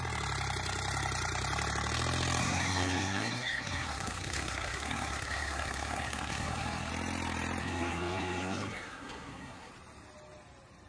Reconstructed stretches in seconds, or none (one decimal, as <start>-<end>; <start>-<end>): 2.4-6.9; 7.6-9.7